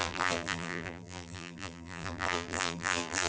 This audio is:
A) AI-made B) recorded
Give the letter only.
A